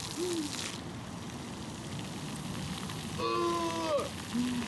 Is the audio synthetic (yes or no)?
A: no